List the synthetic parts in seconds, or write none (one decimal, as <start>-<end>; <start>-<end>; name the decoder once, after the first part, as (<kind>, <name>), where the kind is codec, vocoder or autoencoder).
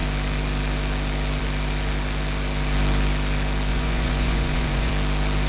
3.7-4.9 (vocoder, Vocos)